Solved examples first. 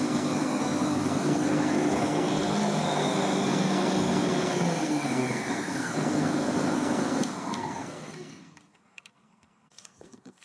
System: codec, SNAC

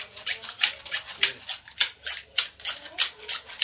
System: none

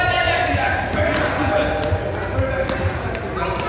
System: none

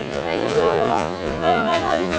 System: vocoder, Vocos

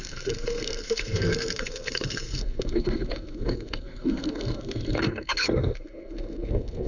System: codec, SNAC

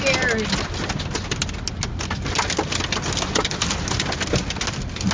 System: none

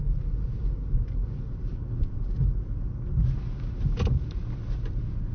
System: none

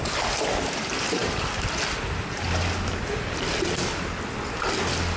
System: none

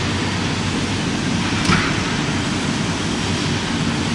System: none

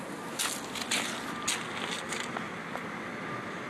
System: none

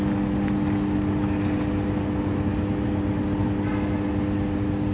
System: none